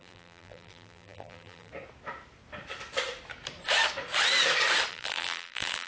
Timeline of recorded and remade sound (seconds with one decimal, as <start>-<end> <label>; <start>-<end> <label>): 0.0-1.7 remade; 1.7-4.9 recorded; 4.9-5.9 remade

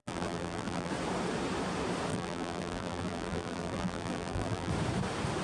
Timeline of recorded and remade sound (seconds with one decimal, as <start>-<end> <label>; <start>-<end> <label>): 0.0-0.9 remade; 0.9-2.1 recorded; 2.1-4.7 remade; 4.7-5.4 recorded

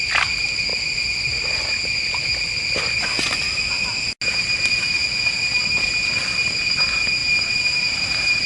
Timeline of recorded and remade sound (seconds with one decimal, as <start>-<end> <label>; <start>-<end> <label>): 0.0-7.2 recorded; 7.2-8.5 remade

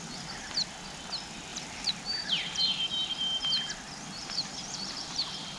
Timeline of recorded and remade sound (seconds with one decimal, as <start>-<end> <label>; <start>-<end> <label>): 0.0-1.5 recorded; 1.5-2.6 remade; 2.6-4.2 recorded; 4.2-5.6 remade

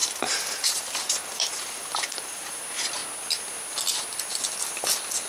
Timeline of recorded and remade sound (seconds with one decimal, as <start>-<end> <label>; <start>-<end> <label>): 0.0-2.6 remade; 2.6-5.3 recorded

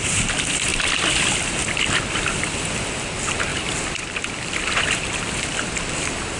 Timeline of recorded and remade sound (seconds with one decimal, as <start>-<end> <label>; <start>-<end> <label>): 0.0-0.7 recorded; 0.7-2.7 remade; 2.7-3.5 recorded; 3.5-5.9 remade; 5.9-6.4 recorded

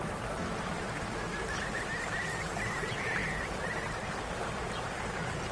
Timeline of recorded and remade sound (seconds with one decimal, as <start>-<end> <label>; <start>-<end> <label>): 0.0-5.5 recorded

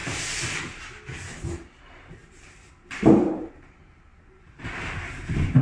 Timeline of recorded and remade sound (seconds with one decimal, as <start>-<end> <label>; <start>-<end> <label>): 0.0-1.8 recorded; 1.8-5.6 remade